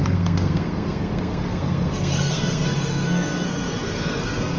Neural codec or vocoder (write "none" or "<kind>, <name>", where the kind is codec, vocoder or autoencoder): codec, SNAC